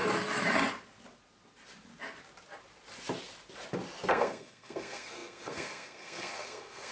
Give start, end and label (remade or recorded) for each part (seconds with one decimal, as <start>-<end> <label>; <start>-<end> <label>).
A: 0.0-4.1 recorded; 4.1-6.9 remade